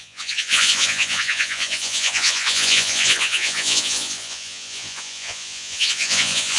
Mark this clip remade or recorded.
remade